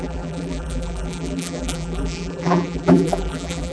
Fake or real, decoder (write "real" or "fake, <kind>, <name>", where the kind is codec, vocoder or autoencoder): fake, vocoder, BigVGAN v2